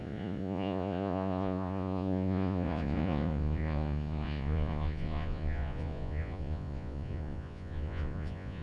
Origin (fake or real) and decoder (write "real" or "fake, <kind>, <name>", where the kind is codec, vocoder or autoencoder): fake, vocoder, Vocos